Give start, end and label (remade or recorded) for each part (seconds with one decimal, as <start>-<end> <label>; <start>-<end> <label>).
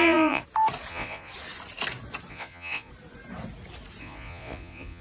0.0-0.4 remade; 0.4-0.9 recorded; 0.9-1.3 remade; 1.3-2.3 recorded; 2.3-2.9 remade; 2.9-4.0 recorded; 4.0-5.0 remade